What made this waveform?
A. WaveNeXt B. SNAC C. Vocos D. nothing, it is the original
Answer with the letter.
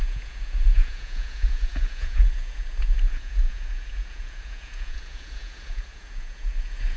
C